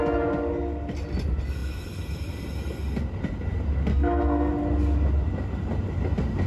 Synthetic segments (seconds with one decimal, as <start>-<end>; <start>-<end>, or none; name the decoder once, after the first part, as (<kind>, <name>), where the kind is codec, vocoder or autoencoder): 3.9-4.5 (codec, SNAC)